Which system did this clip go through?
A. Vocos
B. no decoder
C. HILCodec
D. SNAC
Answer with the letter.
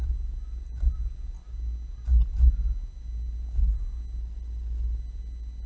B